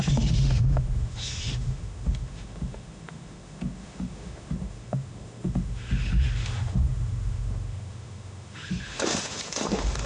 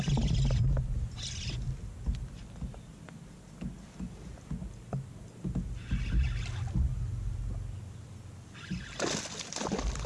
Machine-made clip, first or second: first